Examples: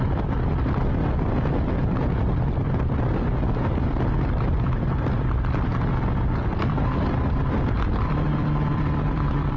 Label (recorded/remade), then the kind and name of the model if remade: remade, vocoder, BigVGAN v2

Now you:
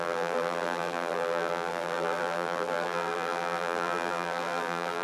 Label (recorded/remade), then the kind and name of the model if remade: remade, vocoder, BigVGAN v2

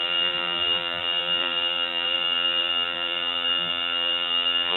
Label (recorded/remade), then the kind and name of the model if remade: remade, vocoder, BigVGAN v2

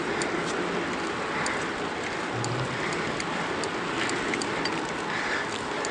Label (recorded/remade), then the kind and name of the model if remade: recorded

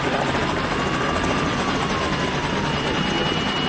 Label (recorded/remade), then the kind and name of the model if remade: remade, vocoder, BigVGAN v2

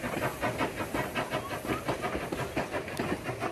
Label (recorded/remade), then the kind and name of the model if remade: recorded